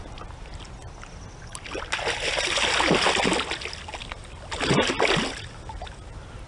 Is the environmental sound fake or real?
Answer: real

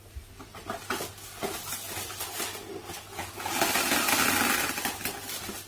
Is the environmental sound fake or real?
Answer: real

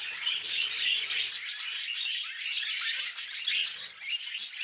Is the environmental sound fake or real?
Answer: real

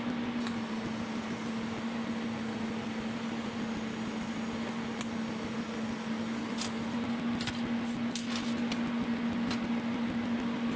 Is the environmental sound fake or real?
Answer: real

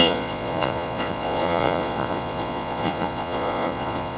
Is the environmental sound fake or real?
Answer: fake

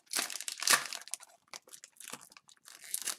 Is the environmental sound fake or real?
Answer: real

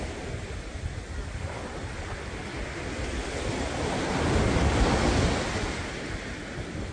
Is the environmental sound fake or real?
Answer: real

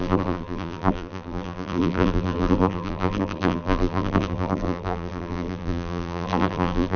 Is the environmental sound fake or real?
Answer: fake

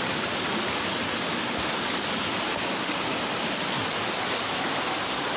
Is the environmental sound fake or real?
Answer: real